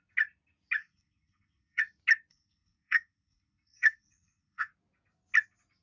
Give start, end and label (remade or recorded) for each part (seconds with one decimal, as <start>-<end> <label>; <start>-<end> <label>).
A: 0.0-0.8 recorded; 0.8-1.8 remade; 1.8-2.3 recorded; 2.3-4.7 remade; 4.7-5.8 recorded